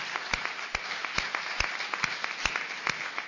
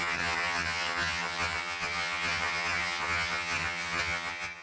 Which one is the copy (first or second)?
second